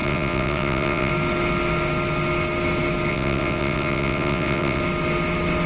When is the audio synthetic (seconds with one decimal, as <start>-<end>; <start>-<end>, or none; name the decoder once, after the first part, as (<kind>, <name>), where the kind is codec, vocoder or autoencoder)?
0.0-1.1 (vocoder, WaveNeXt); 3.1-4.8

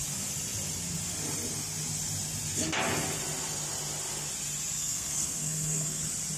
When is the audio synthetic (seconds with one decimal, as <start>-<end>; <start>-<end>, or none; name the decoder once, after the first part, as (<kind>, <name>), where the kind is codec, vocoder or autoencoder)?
4.8-6.0 (codec, SNAC)

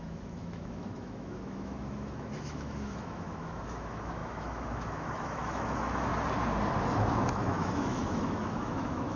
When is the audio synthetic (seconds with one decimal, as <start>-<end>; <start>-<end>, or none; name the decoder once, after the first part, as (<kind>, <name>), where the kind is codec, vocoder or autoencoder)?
0.0-6.1 (autoencoder, DAC-VAE); 6.8-9.2

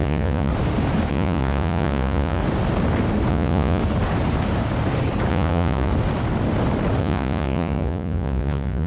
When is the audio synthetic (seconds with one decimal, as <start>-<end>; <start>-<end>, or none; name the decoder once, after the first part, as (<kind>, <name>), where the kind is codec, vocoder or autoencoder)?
0.0-0.5 (vocoder, Vocos); 1.1-2.4; 3.3-3.8; 5.3-5.9; 7.0-8.9

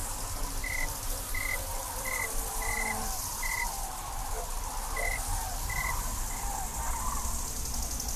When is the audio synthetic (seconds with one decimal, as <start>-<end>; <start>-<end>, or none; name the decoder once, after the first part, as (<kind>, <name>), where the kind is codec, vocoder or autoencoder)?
0.0-4.3 (vocoder, BigVGAN v2)

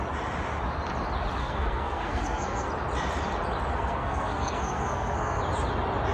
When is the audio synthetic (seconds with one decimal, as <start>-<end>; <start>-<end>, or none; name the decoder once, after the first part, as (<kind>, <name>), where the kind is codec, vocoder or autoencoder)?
1.4-2.7 (codec, SNAC); 3.7-5.4